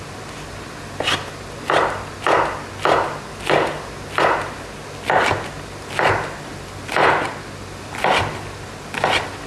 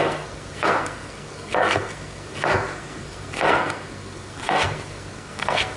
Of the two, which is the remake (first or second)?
second